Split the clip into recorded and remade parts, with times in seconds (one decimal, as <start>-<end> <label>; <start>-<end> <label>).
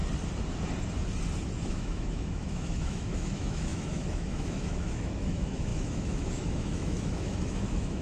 0.0-1.7 recorded; 1.7-8.0 remade